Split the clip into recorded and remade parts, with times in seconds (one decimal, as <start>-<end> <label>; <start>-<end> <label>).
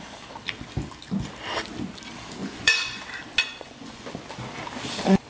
0.0-2.4 recorded; 2.4-3.0 remade; 3.0-3.4 recorded; 3.4-4.1 remade; 4.1-5.3 recorded